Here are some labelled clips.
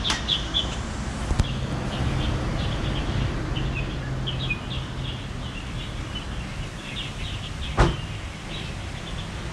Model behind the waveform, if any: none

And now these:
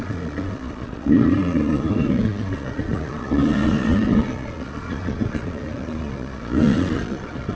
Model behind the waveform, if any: vocoder, Vocos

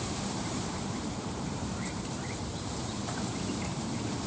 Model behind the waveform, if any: vocoder, BigVGAN v2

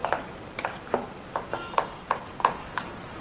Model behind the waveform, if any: none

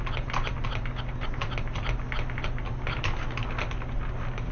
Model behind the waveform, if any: none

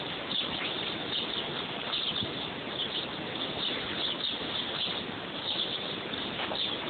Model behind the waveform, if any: none